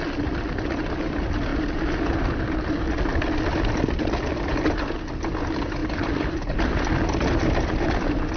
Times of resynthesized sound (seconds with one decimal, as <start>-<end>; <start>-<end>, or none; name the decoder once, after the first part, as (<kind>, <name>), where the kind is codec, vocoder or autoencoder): none